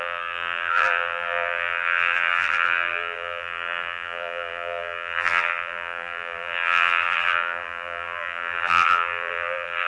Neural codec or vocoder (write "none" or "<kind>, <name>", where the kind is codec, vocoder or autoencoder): vocoder, BigVGAN v2